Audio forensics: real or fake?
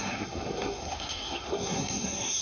fake